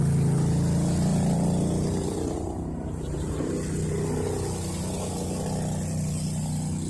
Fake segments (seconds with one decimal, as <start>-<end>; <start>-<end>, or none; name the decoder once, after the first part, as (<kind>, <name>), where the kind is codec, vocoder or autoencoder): 1.1-3.5 (vocoder, BigVGAN v2)